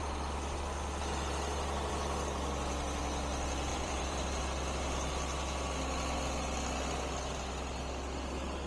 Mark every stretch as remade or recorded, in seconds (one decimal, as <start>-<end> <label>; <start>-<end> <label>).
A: 0.0-3.7 recorded; 3.7-4.4 remade; 4.4-8.7 recorded